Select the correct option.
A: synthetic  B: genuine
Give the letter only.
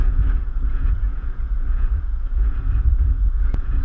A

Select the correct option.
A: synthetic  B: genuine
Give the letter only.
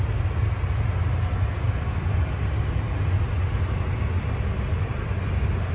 B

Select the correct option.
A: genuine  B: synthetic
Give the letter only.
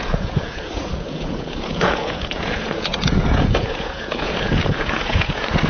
B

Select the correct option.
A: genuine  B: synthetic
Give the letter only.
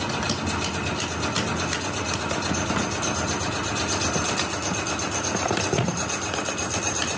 A